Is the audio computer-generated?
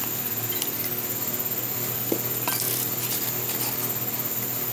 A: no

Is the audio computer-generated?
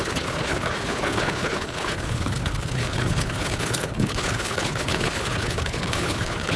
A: yes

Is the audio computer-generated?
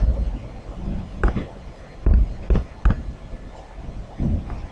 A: no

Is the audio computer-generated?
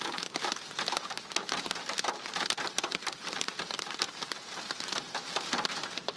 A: yes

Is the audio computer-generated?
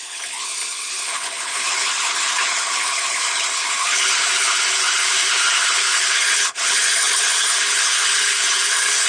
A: yes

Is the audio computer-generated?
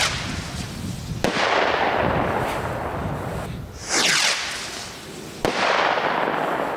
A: no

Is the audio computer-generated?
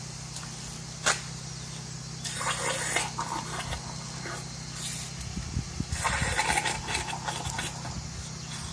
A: no